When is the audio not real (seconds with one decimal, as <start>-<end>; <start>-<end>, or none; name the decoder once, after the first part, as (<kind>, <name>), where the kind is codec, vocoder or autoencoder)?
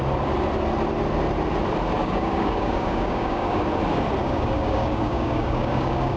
2.0-3.6 (codec, DAC); 4.2-6.2